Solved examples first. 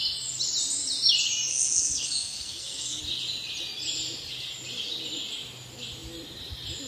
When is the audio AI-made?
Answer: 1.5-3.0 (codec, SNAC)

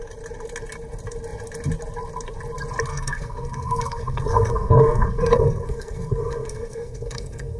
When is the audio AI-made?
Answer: 2.9-7.6 (codec, SNAC)

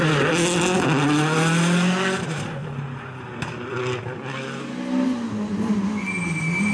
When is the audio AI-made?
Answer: none

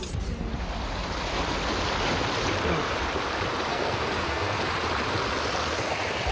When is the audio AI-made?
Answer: 3.7-4.6 (codec, SNAC)